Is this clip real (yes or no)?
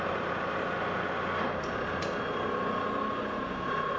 yes